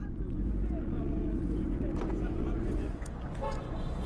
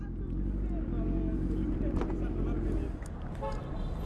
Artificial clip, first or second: first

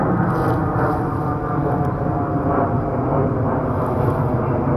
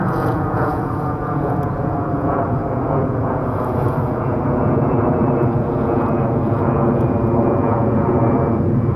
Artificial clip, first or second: second